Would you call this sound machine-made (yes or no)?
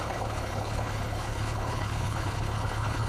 yes